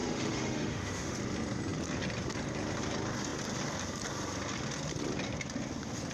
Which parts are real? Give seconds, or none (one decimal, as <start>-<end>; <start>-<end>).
1.2-6.1